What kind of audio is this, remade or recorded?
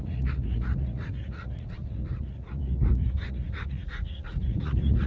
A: remade